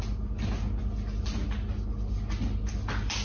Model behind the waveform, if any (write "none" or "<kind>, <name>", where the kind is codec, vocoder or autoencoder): none